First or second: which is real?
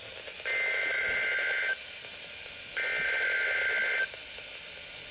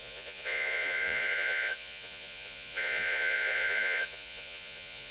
first